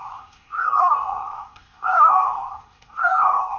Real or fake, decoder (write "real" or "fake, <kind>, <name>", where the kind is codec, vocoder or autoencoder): fake, codec, SNAC